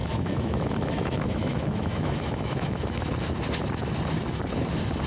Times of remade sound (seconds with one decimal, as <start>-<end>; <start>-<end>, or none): 0.0-3.1